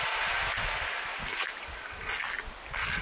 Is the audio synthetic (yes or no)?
no